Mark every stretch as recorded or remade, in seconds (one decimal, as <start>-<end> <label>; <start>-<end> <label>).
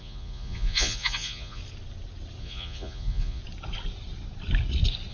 0.0-1.6 remade; 1.6-2.4 recorded; 2.4-3.4 remade; 3.4-5.1 recorded